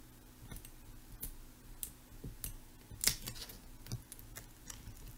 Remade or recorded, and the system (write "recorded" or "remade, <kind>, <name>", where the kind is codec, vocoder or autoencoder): recorded